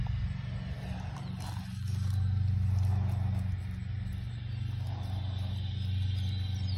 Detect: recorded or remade recorded